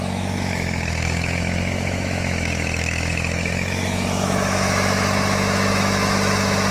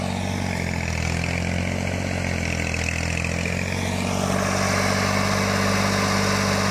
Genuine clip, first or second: second